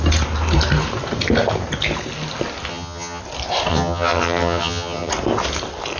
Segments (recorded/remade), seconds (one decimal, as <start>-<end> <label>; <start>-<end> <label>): 0.0-2.7 recorded; 2.7-3.2 remade; 3.2-3.7 recorded; 3.7-5.1 remade; 5.1-6.0 recorded